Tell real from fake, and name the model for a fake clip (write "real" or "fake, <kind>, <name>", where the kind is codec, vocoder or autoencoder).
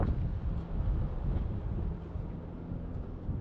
real